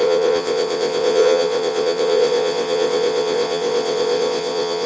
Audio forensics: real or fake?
fake